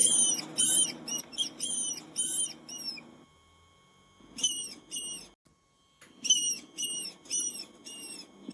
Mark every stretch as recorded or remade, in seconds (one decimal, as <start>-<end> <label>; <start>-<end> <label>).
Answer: 0.0-7.3 recorded; 7.3-7.8 remade; 7.8-8.5 recorded